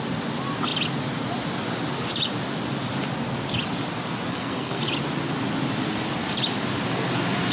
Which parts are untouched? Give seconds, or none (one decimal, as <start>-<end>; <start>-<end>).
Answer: 0.0-4.3; 4.8-7.5